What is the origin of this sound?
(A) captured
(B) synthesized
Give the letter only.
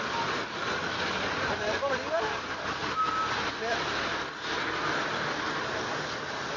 A